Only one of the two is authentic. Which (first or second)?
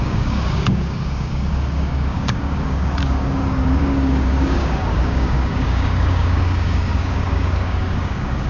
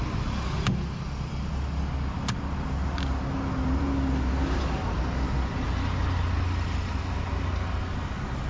second